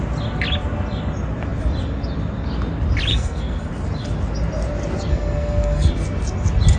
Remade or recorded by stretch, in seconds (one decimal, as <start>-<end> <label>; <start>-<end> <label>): 0.0-3.1 recorded; 3.1-3.7 remade; 3.7-5.1 recorded; 5.1-5.9 remade; 5.9-6.8 recorded